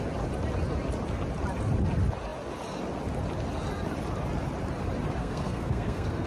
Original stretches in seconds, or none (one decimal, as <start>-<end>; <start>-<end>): 0.0-5.2